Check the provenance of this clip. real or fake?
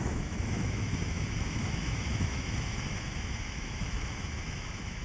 fake